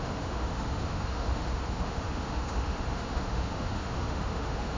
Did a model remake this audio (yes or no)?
yes